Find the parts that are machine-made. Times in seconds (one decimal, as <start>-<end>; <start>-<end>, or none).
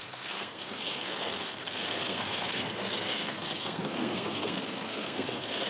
0.0-5.7